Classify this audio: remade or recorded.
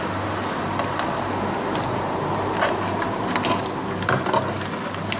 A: recorded